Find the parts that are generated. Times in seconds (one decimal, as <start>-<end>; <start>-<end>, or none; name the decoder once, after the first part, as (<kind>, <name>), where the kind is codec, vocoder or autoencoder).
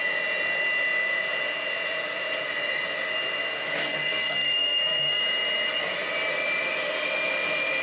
3.8-5.2 (codec, SNAC)